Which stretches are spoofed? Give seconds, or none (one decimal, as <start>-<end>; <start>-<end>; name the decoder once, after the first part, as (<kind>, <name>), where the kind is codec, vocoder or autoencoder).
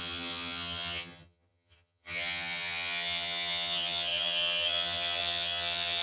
0.0-6.0 (vocoder, HiFi-GAN)